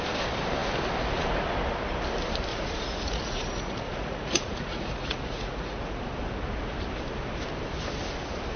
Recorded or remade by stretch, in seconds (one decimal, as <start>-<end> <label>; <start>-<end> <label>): 0.0-2.5 recorded; 2.5-5.9 remade; 5.9-8.6 recorded